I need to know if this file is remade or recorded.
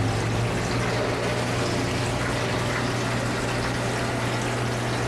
recorded